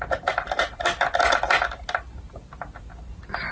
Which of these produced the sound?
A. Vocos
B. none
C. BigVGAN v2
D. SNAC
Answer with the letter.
B